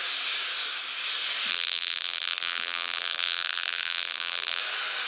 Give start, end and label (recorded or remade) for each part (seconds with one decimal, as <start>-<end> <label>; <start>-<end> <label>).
0.0-1.5 recorded; 1.5-4.6 remade; 4.6-5.1 recorded